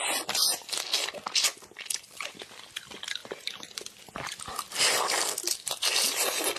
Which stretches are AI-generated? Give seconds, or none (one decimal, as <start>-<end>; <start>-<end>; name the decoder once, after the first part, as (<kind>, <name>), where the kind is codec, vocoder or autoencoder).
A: none